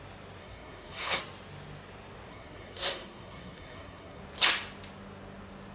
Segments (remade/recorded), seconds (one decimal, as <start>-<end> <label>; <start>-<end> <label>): 0.0-0.4 recorded; 0.4-1.2 remade; 1.2-2.3 recorded; 2.3-4.2 remade; 4.2-5.7 recorded